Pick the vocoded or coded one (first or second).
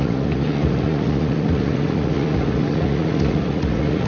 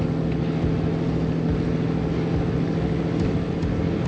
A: first